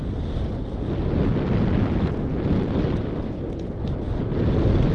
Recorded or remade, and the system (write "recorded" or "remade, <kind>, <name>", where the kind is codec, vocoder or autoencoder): recorded